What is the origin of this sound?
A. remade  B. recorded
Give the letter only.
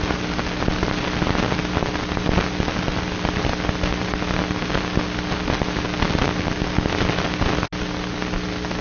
B